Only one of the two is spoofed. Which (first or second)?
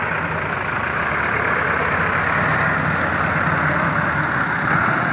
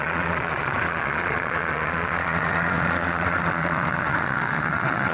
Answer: second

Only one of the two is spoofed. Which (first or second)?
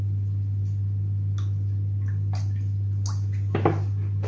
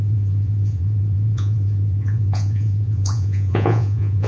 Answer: second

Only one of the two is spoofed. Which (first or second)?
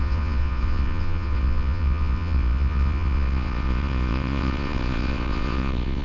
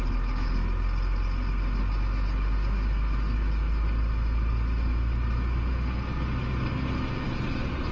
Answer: first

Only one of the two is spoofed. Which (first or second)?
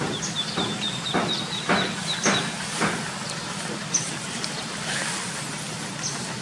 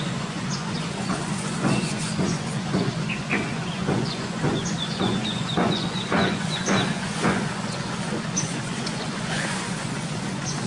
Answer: second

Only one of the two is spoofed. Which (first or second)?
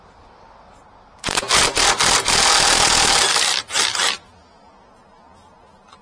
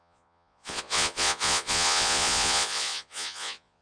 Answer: second